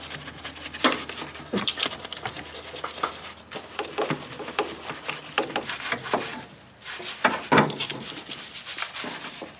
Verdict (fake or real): real